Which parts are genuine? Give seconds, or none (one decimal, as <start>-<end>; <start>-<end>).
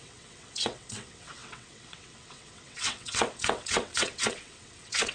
none